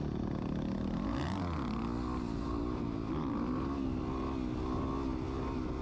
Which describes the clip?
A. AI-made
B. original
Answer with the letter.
B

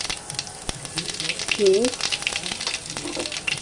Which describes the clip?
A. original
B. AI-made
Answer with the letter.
A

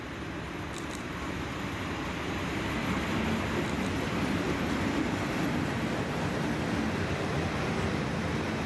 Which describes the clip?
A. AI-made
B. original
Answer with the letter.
B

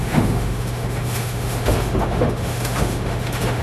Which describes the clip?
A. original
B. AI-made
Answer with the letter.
B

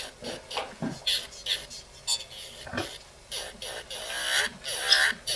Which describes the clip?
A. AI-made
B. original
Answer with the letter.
B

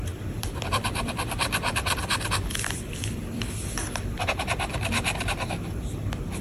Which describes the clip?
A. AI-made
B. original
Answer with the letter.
A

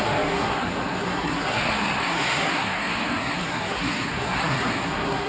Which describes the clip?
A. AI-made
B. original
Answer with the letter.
A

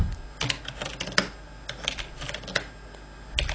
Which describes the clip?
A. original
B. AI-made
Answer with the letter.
A